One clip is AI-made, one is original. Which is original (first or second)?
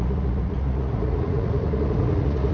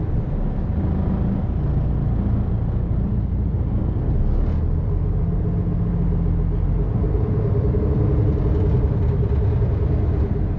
second